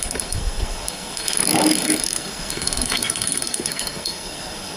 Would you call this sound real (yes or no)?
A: no